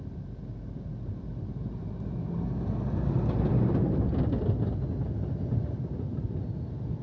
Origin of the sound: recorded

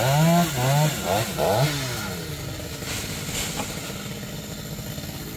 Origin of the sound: recorded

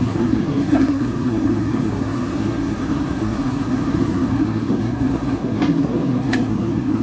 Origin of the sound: remade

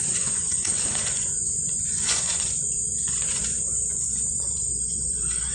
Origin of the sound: remade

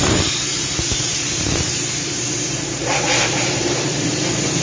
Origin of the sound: remade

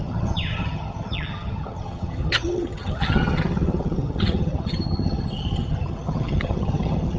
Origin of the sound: remade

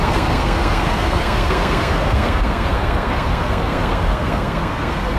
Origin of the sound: remade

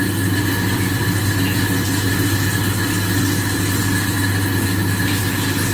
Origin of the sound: recorded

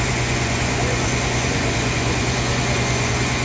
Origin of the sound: remade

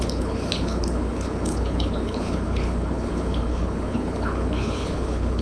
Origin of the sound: remade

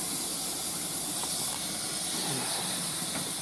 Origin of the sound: recorded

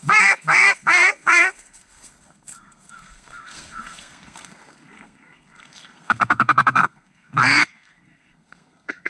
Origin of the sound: remade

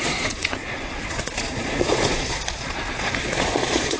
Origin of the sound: remade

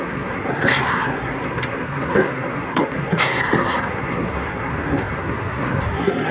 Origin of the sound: remade